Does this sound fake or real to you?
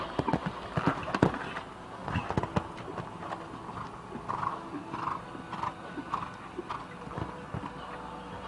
real